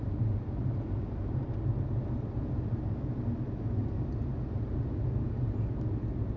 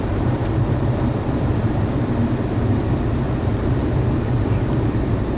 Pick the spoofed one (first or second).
second